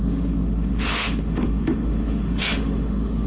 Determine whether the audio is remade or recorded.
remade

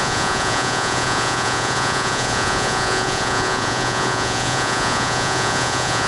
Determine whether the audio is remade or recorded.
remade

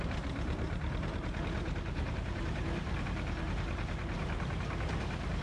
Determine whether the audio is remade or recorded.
remade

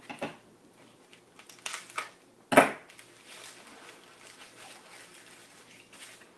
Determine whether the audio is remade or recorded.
recorded